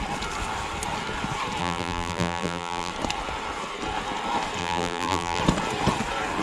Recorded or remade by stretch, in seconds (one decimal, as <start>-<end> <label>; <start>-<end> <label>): 0.0-1.6 recorded; 1.6-2.9 remade; 2.9-4.6 recorded; 4.6-5.4 remade; 5.4-6.4 recorded